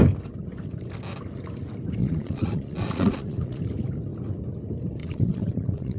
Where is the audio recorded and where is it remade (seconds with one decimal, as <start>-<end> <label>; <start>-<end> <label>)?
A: 0.0-2.0 recorded; 2.0-3.6 remade; 3.6-5.0 recorded; 5.0-6.0 remade